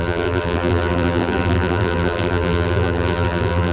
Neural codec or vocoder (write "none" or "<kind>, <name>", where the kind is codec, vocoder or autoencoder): vocoder, BigVGAN v2